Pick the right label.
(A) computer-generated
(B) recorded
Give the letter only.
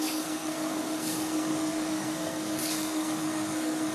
A